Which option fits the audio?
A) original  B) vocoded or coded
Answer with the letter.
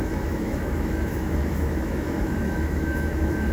B